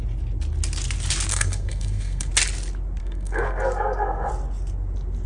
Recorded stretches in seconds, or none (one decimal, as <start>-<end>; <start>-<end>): 0.0-1.3; 2.3-3.0; 4.3-5.3